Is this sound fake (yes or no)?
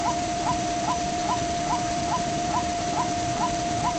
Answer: yes